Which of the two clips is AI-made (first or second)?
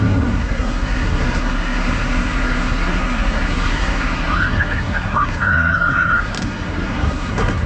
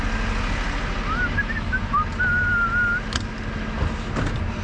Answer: first